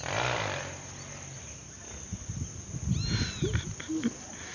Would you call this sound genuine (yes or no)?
yes